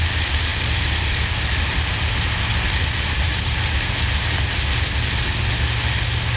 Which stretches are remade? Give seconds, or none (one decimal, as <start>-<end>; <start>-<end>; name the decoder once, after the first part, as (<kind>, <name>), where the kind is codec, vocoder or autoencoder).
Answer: none